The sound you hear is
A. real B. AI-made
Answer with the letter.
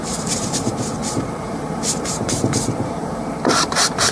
B